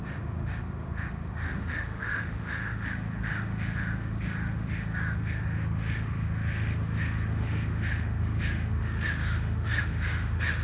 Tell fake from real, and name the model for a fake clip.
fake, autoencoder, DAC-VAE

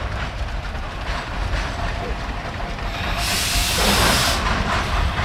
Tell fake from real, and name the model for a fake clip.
fake, vocoder, BigVGAN v2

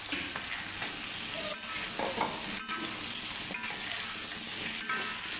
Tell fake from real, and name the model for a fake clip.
real